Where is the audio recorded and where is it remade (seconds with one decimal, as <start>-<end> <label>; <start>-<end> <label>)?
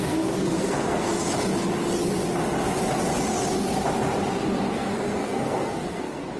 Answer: 0.0-1.1 remade; 1.1-4.7 recorded; 4.7-6.4 remade